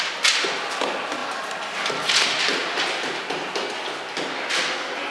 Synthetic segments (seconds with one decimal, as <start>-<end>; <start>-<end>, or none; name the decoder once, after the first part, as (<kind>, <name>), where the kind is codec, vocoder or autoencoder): none